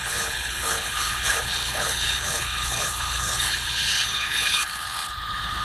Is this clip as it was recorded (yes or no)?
no